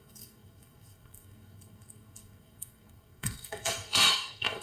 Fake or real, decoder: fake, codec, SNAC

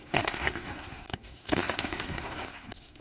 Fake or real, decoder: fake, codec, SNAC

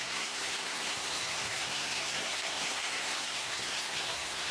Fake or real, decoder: fake, codec, SNAC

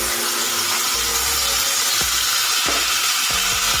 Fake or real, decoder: real